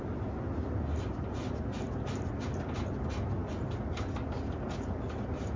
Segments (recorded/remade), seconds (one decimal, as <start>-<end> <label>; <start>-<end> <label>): 0.0-5.6 recorded

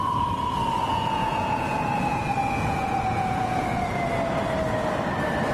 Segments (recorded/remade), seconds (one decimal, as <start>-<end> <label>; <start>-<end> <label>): 0.0-0.8 recorded; 0.8-4.1 remade; 4.1-5.5 recorded

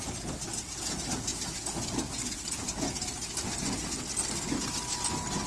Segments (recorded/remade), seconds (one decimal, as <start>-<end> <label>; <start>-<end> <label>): 0.0-5.5 recorded

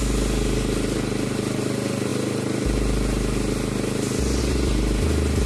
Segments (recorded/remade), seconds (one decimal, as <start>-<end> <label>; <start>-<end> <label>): 0.0-5.5 recorded

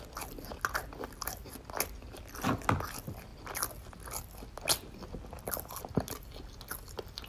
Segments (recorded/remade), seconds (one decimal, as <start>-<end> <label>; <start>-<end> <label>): 0.0-7.3 recorded

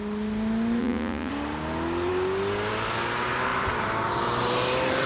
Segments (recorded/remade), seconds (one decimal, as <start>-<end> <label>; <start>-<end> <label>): 0.0-0.8 recorded; 0.8-1.3 remade; 1.3-5.1 recorded